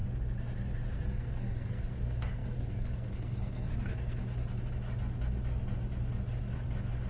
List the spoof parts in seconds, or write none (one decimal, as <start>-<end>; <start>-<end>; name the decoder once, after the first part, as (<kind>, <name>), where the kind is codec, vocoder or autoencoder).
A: 0.9-4.2 (codec, SNAC)